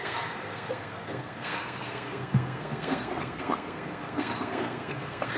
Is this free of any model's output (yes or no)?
no